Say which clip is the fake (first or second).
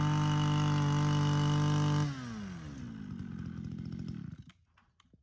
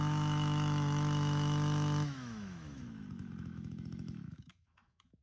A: second